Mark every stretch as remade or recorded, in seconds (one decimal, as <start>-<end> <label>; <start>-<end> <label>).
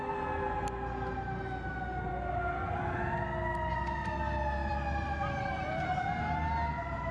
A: 0.0-7.1 recorded